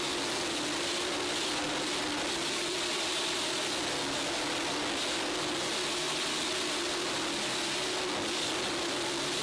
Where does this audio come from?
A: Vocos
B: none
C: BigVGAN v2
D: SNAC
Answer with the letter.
B